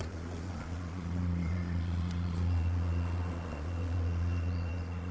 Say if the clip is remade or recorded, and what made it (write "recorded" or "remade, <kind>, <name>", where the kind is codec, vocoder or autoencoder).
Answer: remade, vocoder, Vocos